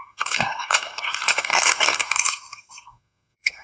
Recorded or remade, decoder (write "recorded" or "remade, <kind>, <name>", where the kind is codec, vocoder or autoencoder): remade, codec, SNAC